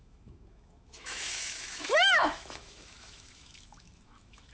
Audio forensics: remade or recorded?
remade